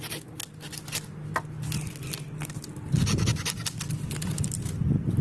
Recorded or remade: recorded